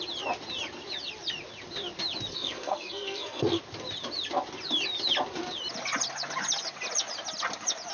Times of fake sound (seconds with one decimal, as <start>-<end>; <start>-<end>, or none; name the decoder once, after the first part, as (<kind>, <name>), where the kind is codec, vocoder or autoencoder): 2.3-3.6 (codec, SNAC)